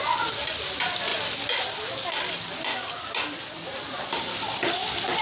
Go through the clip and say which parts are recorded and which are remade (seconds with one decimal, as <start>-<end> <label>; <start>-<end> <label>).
0.0-5.2 recorded